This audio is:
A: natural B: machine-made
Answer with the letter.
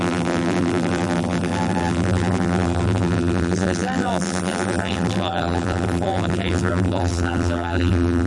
B